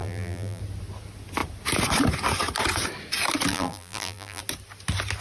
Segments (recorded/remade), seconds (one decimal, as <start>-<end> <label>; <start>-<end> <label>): 0.0-0.6 remade; 0.6-3.5 recorded; 3.5-4.4 remade; 4.4-5.2 recorded

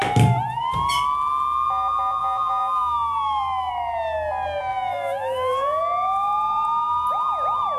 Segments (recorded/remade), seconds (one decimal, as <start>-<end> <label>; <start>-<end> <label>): 0.0-2.2 recorded; 2.2-3.7 remade; 3.7-4.7 recorded; 4.7-5.8 remade; 5.8-7.8 recorded